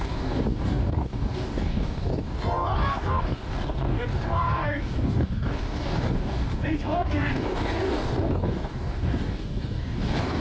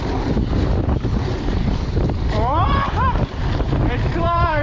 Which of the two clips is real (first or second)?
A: second